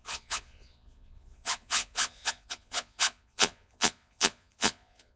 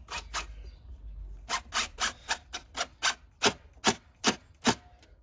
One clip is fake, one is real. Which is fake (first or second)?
first